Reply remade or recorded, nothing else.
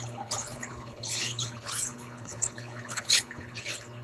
remade